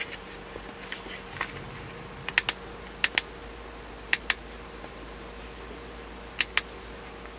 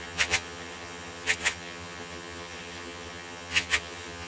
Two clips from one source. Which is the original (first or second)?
first